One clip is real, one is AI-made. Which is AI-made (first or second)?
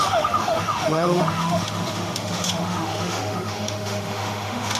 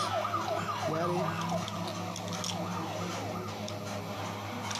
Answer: first